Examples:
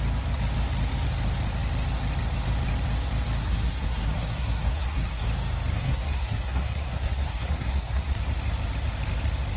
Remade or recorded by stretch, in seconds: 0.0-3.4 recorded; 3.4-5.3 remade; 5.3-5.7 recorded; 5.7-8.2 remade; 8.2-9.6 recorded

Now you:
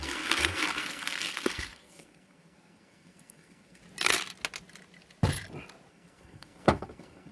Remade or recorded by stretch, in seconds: 0.0-3.8 remade; 3.8-5.9 recorded; 5.9-7.3 remade

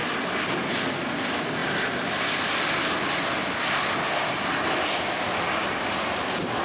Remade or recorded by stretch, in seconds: 0.0-6.6 recorded

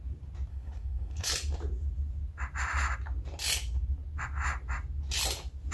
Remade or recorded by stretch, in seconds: 0.0-0.5 recorded; 0.5-1.3 remade; 1.3-5.7 recorded